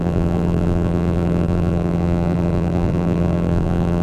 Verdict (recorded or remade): remade